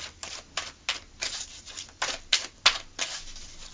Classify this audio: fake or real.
real